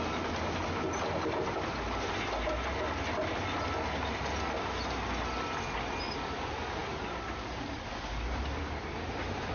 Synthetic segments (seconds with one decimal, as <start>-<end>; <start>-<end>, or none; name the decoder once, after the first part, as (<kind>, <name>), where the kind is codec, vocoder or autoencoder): none